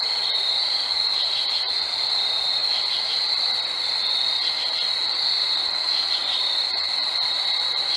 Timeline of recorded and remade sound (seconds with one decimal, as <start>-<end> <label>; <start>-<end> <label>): 0.0-8.0 recorded